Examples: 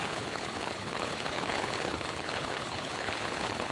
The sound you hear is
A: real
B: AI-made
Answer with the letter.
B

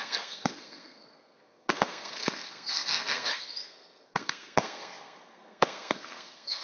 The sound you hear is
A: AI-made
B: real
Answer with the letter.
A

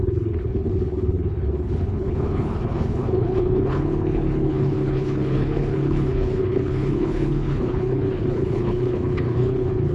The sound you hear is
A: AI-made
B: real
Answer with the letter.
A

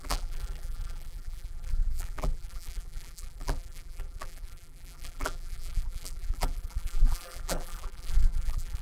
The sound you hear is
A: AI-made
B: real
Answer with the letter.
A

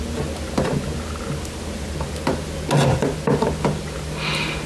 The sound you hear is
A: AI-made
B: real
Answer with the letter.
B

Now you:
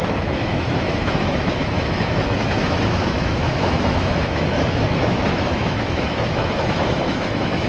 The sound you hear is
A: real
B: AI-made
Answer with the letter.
B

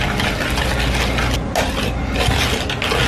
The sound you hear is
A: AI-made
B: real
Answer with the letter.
B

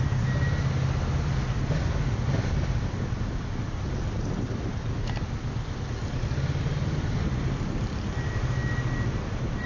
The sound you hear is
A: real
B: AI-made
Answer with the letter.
A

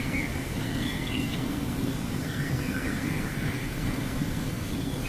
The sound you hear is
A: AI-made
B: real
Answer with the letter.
A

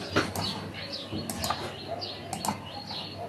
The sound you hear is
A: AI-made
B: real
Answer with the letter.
B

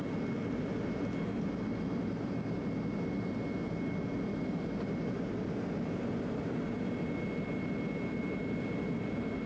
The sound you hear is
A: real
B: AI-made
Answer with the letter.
A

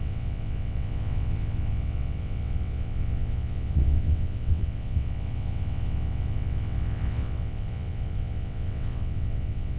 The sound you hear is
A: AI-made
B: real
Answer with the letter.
A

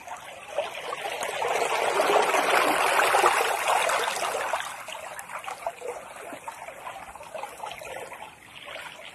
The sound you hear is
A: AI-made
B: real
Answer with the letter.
B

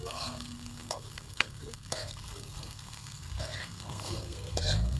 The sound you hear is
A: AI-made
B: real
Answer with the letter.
A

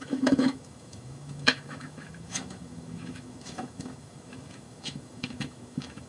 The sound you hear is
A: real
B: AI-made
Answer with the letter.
B